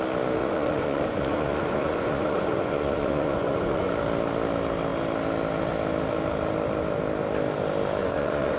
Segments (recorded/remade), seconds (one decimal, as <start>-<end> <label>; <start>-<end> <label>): 0.0-0.4 recorded; 0.4-3.9 remade; 3.9-8.0 recorded; 8.0-8.6 remade